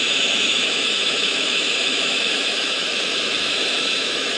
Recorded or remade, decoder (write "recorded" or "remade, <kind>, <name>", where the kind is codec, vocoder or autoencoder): remade, autoencoder, DAC-VAE